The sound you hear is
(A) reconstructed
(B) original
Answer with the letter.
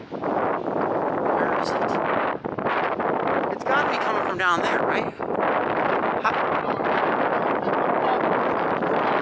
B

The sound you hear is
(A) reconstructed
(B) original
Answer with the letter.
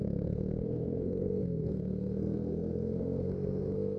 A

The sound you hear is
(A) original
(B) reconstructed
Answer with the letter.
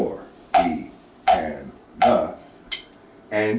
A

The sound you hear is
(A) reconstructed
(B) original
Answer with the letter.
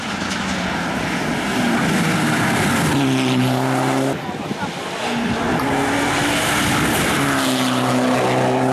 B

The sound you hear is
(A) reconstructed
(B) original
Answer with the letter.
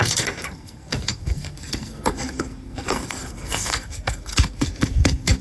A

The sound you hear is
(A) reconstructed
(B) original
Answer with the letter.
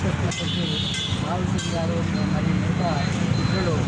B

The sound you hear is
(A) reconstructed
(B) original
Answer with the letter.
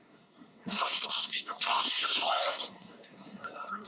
A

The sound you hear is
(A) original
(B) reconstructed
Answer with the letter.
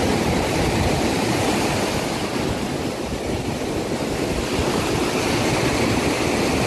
A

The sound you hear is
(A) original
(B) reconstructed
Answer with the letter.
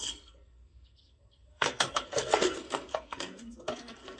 B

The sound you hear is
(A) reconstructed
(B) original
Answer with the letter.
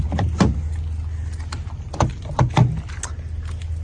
B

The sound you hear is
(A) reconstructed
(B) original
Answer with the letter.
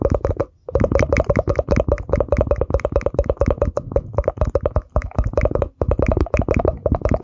B